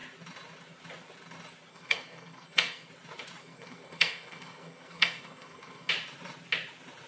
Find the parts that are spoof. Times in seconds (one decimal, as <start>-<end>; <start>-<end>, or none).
1.7-2.9; 3.4-5.9